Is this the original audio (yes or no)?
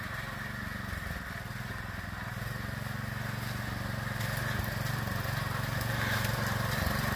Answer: yes